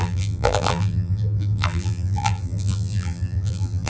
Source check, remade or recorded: remade